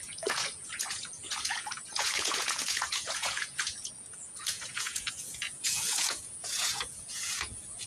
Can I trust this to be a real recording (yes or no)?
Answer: no